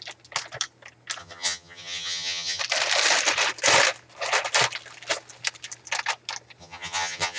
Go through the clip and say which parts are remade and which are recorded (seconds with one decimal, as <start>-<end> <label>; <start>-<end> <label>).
0.0-1.2 recorded; 1.2-2.6 remade; 2.6-6.6 recorded; 6.6-7.4 remade